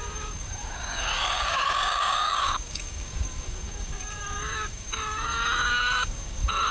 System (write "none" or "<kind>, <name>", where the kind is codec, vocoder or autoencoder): codec, DAC